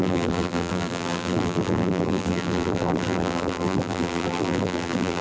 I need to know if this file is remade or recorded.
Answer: remade